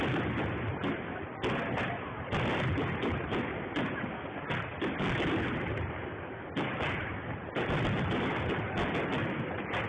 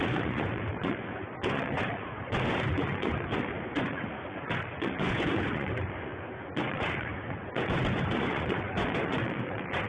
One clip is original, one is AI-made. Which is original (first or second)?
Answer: first